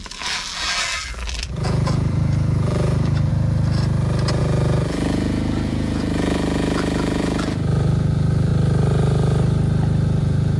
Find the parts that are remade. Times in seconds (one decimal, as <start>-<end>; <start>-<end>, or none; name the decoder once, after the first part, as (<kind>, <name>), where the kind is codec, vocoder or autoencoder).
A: 0.0-3.3 (vocoder, BigVGAN v2); 4.4-8.5; 10.2-10.6